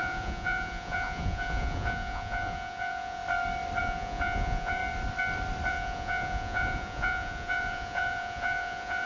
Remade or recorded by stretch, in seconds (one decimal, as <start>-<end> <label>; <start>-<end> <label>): 0.0-3.2 remade; 3.2-3.8 recorded; 3.8-4.8 remade; 4.8-5.7 recorded; 5.7-9.1 remade